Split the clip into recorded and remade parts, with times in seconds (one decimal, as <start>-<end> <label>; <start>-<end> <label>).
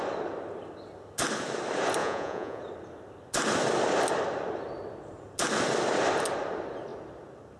0.0-2.0 recorded; 2.0-2.6 remade; 2.6-7.6 recorded